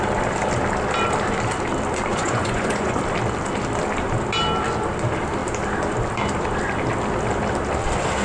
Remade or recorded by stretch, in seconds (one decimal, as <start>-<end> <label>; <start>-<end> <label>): 0.0-2.1 recorded; 2.1-3.0 remade; 3.0-8.2 recorded

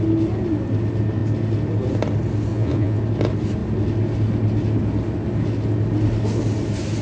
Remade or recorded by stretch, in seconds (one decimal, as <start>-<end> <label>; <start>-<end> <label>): 0.0-2.5 recorded; 2.5-3.0 remade; 3.0-7.0 recorded

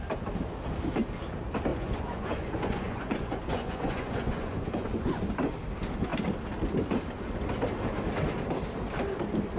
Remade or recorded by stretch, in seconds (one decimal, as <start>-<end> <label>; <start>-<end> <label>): 0.0-1.7 recorded; 1.7-5.2 remade; 5.2-9.6 recorded

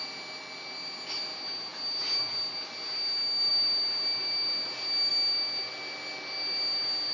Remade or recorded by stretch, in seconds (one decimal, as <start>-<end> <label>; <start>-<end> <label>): 0.0-7.1 recorded

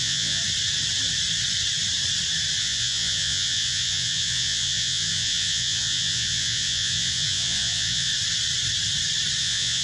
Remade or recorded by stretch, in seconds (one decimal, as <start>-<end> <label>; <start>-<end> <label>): 0.0-0.4 remade; 0.4-2.6 recorded; 2.6-8.1 remade; 8.1-9.4 recorded; 9.4-9.8 remade

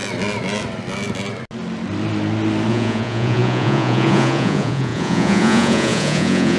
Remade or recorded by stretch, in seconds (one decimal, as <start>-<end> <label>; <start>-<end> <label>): 0.0-2.7 recorded; 2.7-6.6 remade